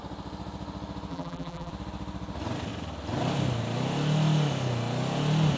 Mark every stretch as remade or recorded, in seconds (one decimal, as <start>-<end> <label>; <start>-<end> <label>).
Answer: 0.0-1.1 recorded; 1.1-1.7 remade; 1.7-5.6 recorded